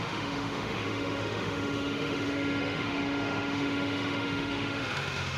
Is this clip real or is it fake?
fake